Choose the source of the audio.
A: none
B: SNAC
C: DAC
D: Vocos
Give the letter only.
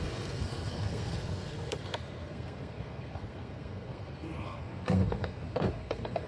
B